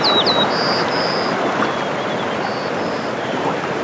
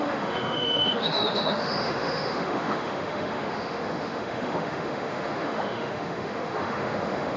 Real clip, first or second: first